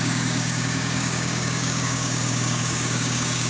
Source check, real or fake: fake